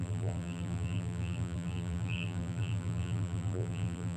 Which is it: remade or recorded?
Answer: remade